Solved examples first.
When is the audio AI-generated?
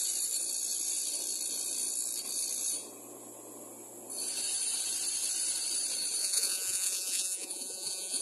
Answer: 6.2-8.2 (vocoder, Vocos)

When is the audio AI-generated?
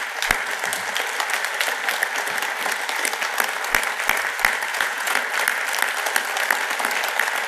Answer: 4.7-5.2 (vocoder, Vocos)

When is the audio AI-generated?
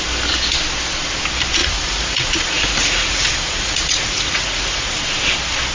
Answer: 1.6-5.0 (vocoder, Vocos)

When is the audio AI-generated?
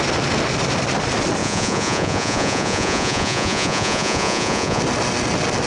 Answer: 1.4-4.8 (vocoder, Vocos)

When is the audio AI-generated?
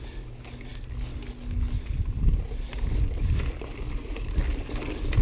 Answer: none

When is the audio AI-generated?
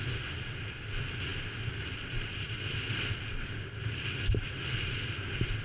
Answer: none